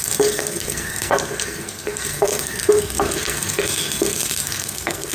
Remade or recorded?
remade